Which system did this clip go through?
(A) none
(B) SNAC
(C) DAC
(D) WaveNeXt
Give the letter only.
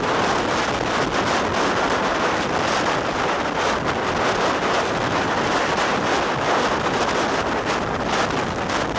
A